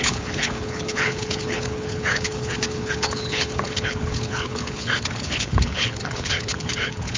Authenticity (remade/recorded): remade